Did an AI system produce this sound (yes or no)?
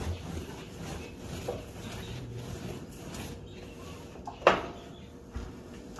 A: yes